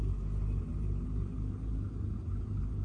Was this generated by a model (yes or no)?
no